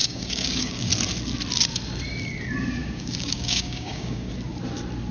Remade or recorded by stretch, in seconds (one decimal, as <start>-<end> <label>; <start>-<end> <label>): 0.0-0.9 remade; 0.9-2.8 recorded; 2.8-4.3 remade; 4.3-5.1 recorded